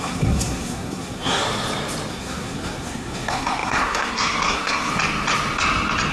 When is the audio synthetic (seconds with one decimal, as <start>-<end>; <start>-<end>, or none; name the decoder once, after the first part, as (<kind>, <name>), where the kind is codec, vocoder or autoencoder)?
0.0-1.4 (codec, SNAC); 2.1-4.9